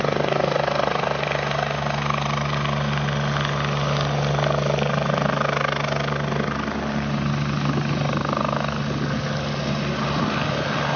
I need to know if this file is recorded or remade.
recorded